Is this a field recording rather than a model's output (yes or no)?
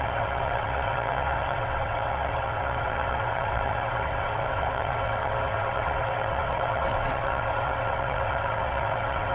no